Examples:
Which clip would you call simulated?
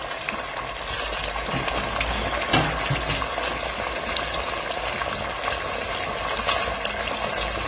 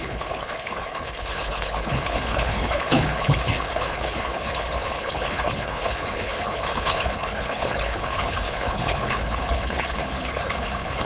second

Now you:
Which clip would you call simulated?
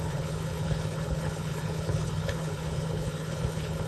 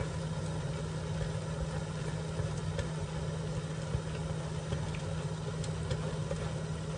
first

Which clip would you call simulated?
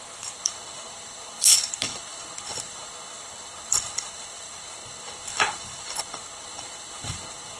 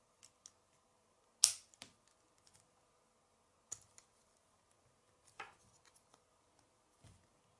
first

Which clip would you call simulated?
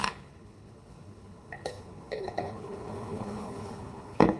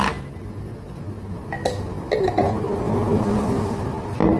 first